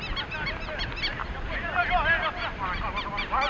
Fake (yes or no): no